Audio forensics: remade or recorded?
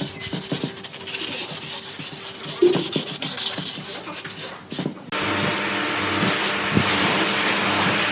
recorded